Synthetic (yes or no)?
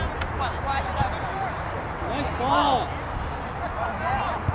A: no